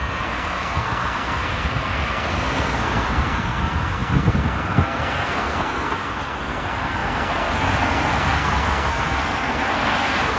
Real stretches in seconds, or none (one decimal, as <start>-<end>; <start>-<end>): none